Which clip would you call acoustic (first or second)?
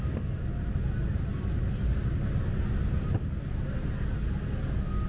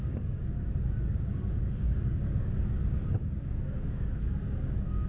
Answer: first